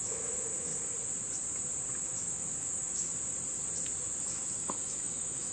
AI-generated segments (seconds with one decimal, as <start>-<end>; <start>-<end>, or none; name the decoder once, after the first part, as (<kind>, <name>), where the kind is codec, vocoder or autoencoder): 0.0-0.7 (autoencoder, DAC-VAE); 2.0-3.1; 4.2-5.5